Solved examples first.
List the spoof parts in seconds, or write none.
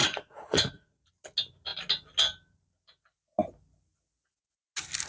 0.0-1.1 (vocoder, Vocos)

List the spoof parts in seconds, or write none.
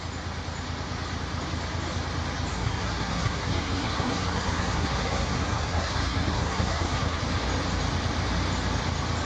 2.5-7.2 (codec, SNAC)